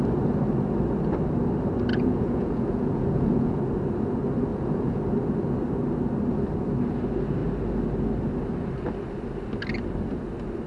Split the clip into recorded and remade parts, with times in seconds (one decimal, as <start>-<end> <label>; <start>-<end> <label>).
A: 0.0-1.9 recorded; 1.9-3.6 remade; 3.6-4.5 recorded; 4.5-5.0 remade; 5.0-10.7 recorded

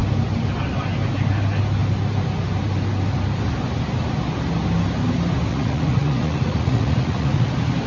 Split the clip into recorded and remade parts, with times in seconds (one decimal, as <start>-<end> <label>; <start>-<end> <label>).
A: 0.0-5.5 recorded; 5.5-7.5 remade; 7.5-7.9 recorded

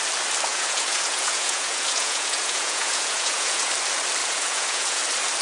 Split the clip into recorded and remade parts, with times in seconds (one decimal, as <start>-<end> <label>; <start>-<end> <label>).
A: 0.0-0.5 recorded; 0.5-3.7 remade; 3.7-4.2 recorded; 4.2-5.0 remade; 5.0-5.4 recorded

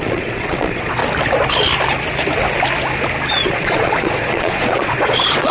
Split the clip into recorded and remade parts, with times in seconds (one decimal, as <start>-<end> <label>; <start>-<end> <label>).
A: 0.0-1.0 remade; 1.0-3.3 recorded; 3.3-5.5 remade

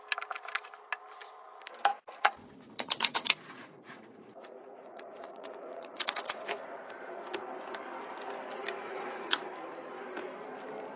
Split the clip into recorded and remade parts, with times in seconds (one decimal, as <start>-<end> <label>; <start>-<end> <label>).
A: 0.0-1.9 recorded; 1.9-6.9 remade; 6.9-8.8 recorded; 8.8-9.5 remade; 9.5-11.0 recorded

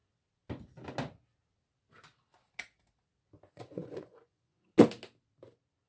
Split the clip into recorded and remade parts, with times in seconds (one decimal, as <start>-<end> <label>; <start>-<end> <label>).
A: 0.0-3.5 recorded; 3.5-4.7 remade; 4.7-5.9 recorded

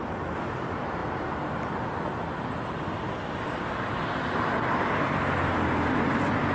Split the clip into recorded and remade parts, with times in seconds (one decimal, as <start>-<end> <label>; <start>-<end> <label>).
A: 0.0-6.5 recorded